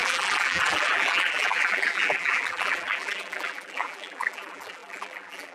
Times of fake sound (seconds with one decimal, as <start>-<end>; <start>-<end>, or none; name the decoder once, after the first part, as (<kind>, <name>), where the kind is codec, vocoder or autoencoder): 0.0-5.5 (vocoder, BigVGAN v2)